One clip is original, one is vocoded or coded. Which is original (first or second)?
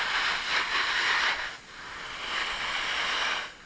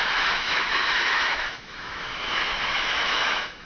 first